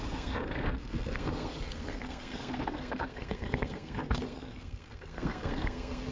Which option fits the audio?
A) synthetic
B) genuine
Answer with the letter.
A